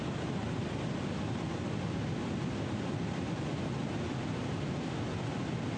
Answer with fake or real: real